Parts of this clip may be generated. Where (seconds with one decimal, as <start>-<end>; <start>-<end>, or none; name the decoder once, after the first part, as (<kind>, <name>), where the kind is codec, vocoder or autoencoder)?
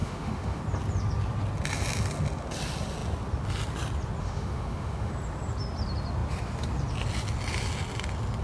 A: 0.0-0.6 (autoencoder, DAC-VAE); 4.2-5.1